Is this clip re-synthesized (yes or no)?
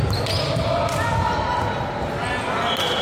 no